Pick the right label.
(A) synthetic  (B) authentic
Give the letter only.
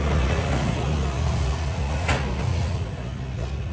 A